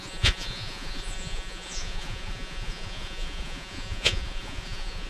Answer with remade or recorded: remade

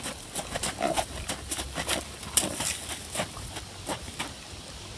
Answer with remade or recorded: recorded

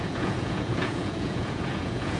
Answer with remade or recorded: remade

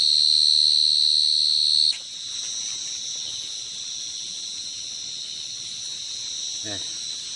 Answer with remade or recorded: recorded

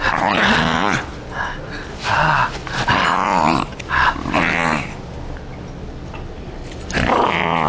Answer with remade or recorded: recorded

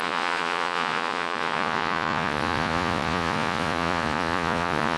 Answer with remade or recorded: remade